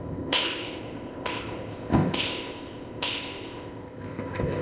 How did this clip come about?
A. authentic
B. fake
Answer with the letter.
B